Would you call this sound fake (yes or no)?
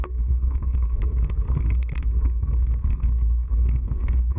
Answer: yes